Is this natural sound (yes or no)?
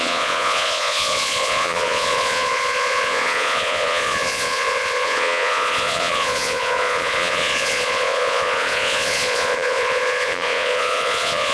no